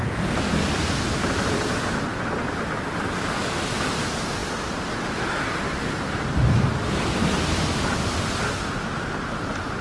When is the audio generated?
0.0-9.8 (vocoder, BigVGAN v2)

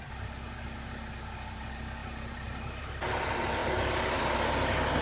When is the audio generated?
2.0-2.8 (vocoder, BigVGAN v2)

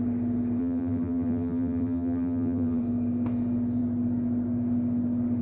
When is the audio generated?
0.6-2.8 (vocoder, BigVGAN v2)

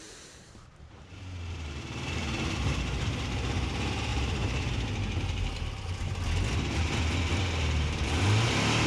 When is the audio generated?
0.0-3.2 (vocoder, BigVGAN v2); 4.1-4.7; 7.3-8.2